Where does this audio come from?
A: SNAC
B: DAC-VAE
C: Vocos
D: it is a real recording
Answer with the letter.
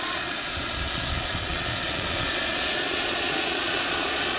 C